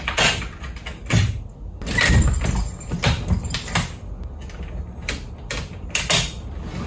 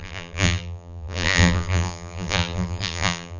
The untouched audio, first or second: first